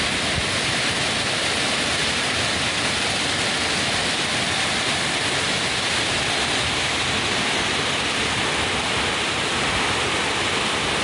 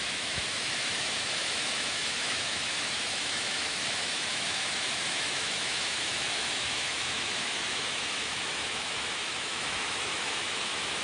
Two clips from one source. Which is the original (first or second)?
first